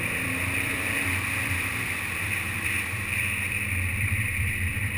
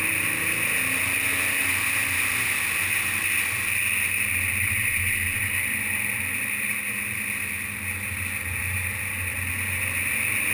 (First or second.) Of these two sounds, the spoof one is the first